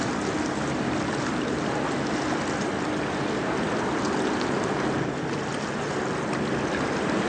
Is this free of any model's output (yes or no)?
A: yes